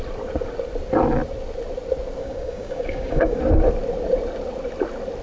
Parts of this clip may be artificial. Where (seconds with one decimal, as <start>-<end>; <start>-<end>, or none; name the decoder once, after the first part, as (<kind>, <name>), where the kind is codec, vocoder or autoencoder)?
2.2-3.4 (codec, DAC)